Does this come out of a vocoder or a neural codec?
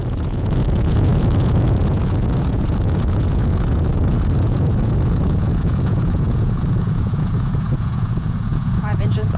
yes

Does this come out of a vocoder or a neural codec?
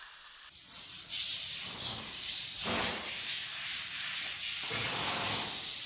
no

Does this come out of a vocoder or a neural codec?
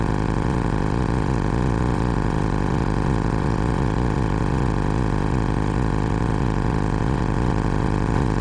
yes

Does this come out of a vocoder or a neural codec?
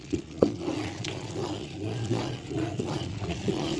yes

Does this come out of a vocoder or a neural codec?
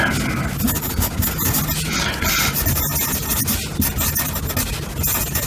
no